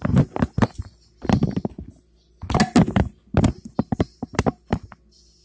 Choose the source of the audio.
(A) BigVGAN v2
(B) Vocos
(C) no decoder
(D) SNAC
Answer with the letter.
C